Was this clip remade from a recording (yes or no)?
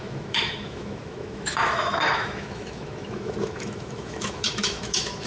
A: yes